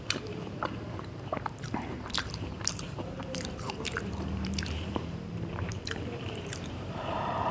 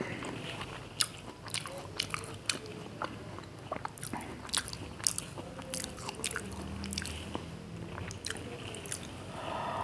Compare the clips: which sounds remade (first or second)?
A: first